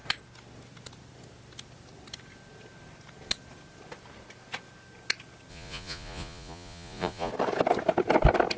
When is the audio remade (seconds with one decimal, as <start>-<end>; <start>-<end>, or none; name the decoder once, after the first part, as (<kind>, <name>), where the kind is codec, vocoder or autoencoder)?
5.5-7.3 (vocoder, Vocos)